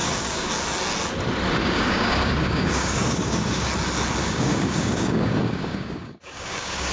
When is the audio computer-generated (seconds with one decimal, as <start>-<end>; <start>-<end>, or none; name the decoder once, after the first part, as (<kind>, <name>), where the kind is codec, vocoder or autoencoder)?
0.0-0.5 (codec, DAC); 1.6-3.7; 4.2-6.9